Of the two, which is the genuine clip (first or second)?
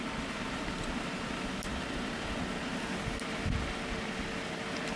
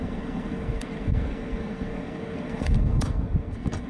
first